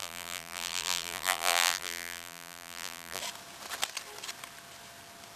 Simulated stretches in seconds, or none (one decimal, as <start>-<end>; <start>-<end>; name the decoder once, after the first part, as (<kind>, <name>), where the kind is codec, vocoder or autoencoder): 0.0-3.2 (vocoder, BigVGAN v2)